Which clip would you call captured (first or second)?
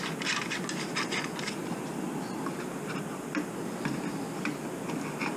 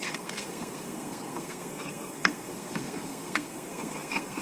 first